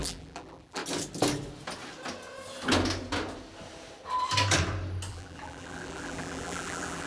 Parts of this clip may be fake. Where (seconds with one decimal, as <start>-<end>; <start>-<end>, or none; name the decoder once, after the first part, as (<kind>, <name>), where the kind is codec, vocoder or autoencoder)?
0.0-0.8 (vocoder, BigVGAN v2); 5.1-7.1